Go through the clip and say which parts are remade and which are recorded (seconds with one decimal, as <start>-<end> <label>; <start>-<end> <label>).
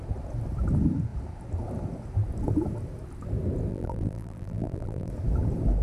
0.0-3.7 recorded; 3.7-5.1 remade; 5.1-5.8 recorded